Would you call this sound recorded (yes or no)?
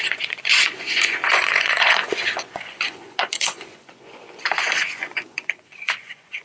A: no